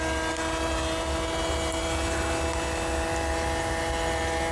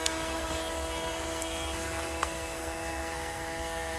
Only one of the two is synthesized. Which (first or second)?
second